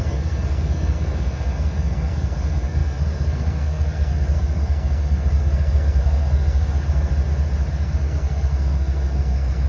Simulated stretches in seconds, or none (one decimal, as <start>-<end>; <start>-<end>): 0.0-7.1; 7.7-9.7